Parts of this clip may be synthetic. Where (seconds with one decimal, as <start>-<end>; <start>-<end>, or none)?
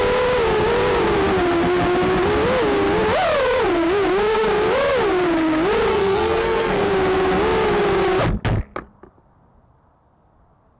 5.9-6.9